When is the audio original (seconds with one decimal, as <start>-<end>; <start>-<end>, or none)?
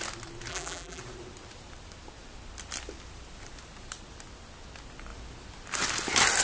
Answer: 0.0-0.5; 1.0-6.4